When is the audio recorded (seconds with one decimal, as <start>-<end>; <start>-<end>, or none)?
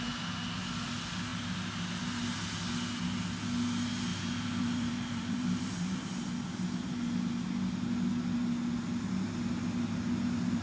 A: 0.0-4.1; 6.1-10.6